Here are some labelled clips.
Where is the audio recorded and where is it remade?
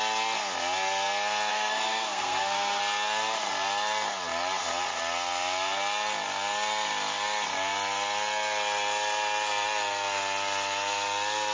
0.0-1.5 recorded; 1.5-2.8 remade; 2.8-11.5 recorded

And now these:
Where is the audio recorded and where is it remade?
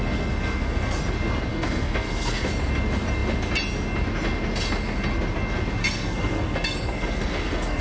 0.0-1.0 remade; 1.0-1.5 recorded; 1.5-2.5 remade; 2.5-5.8 recorded; 5.8-7.8 remade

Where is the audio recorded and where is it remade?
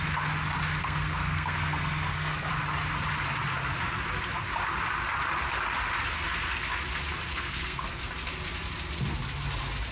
0.0-0.8 recorded; 0.8-2.5 remade; 2.5-7.3 recorded; 7.3-8.1 remade; 8.1-9.9 recorded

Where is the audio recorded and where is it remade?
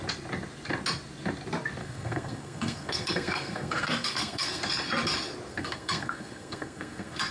0.0-1.8 recorded; 1.8-4.6 remade; 4.6-5.5 recorded; 5.5-7.3 remade